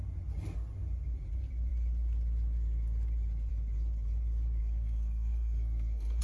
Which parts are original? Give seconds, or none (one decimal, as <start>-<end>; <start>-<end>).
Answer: 0.0-4.6